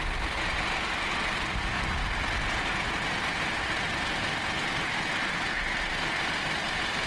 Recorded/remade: recorded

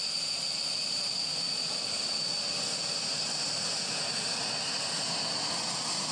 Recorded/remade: recorded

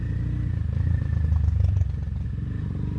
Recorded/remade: recorded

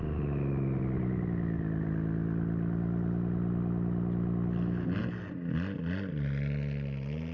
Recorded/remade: recorded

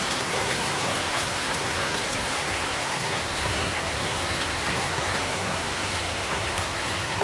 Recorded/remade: remade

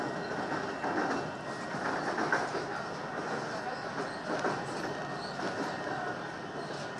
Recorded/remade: recorded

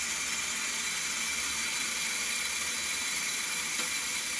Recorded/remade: recorded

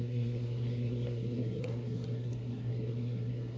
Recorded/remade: remade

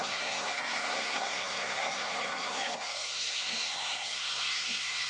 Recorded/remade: remade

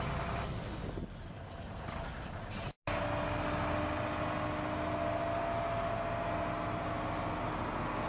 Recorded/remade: recorded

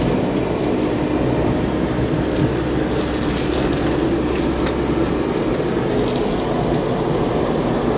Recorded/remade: recorded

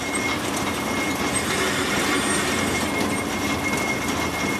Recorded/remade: recorded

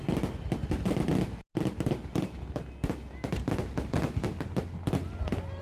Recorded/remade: recorded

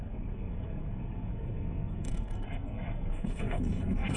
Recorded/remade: remade